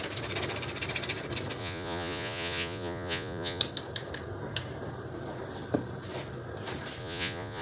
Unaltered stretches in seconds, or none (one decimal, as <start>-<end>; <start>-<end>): 0.0-1.6; 3.6-7.0